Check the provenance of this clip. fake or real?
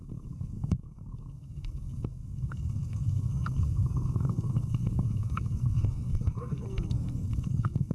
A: fake